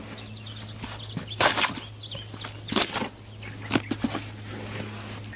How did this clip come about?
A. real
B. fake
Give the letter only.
A